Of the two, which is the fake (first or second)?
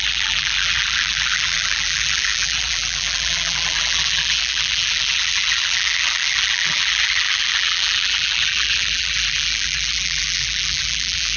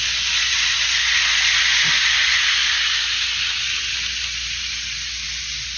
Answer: first